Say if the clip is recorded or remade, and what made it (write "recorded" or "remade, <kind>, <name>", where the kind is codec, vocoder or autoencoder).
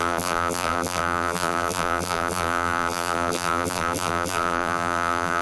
remade, vocoder, BigVGAN v2